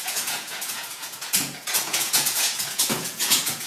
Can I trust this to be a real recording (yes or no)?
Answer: no